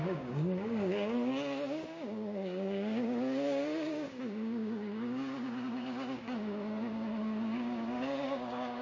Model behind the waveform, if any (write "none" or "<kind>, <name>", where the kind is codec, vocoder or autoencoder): codec, DAC